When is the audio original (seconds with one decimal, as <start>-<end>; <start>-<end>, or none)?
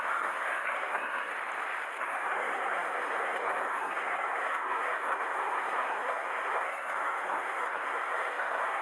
1.3-2.0